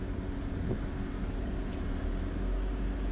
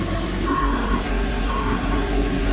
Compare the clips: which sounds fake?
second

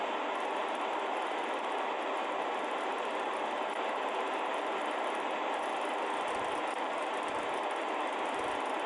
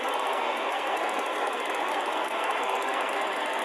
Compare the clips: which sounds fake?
second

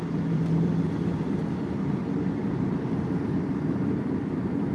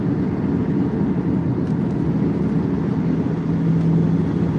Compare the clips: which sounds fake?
first